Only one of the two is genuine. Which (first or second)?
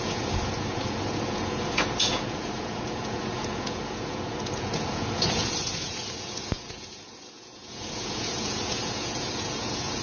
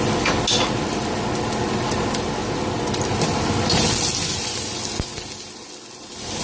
second